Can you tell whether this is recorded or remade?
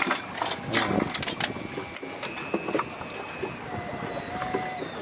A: recorded